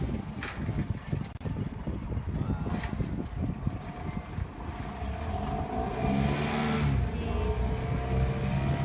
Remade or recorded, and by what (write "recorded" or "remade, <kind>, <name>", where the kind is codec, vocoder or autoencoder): recorded